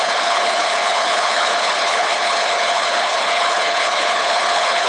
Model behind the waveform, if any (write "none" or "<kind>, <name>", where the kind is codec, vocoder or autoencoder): codec, HILCodec